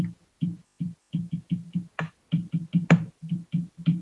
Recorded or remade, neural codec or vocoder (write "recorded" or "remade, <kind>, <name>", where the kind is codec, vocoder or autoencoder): recorded